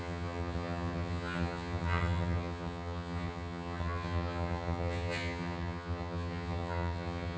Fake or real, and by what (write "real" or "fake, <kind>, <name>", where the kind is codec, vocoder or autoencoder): fake, vocoder, HiFi-GAN